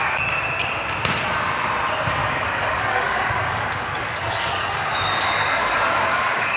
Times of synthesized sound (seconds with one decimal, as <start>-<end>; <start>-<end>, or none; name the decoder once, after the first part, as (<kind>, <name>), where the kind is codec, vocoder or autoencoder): 2.2-6.6 (codec, DAC)